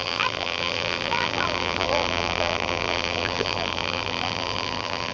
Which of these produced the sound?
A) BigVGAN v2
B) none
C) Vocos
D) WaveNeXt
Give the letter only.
A